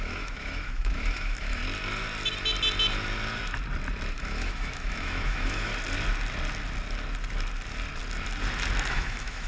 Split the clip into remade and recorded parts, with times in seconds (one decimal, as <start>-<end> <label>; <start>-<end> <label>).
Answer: 0.0-1.6 remade; 1.6-4.1 recorded; 4.1-5.7 remade; 5.7-8.9 recorded; 8.9-9.5 remade